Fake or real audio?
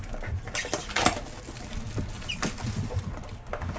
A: fake